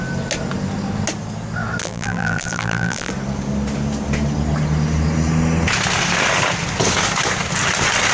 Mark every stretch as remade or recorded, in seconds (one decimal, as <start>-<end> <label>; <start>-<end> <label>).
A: 0.0-1.8 recorded; 1.8-3.1 remade; 3.1-8.1 recorded